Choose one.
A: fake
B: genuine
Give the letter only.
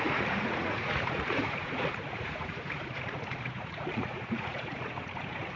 A